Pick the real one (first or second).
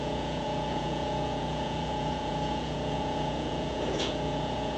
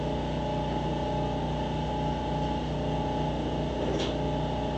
second